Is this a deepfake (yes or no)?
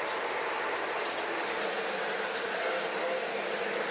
no